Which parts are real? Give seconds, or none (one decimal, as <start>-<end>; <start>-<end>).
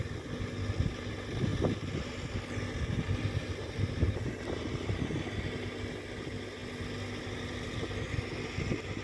0.0-9.0